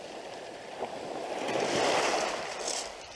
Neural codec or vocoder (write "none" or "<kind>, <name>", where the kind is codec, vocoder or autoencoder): none